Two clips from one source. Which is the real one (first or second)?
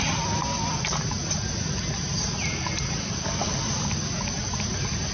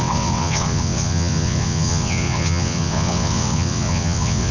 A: first